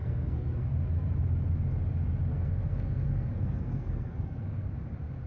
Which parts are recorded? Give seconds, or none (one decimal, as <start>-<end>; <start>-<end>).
0.7-2.3; 4.7-5.3